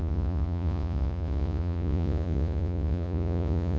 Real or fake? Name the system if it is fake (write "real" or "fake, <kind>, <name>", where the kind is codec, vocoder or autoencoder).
fake, vocoder, Vocos